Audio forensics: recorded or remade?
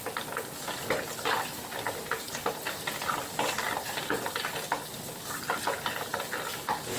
recorded